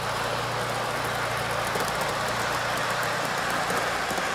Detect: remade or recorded recorded